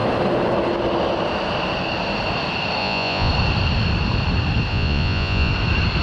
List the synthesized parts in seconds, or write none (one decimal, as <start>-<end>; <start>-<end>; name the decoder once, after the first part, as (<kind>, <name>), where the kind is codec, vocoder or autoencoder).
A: 2.8-3.3 (vocoder, Vocos); 4.7-5.5